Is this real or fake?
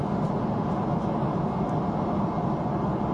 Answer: real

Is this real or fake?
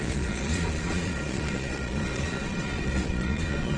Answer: fake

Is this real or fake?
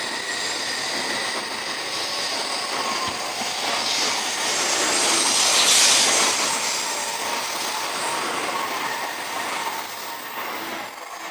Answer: real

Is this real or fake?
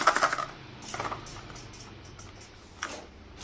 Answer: real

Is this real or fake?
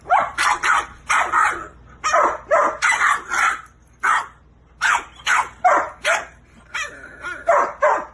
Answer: real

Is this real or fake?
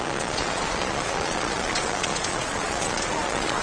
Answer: fake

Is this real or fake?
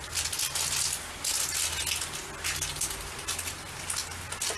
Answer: real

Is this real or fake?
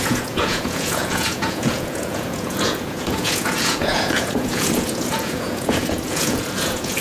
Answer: fake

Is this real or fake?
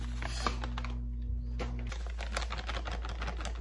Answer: real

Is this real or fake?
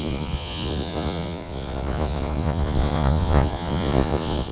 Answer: fake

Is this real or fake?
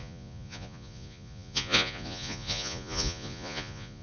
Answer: fake